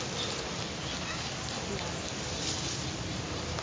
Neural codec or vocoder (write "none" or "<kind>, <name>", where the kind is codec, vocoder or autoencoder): none